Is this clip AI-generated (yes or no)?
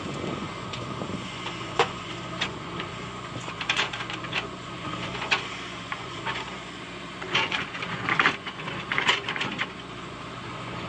yes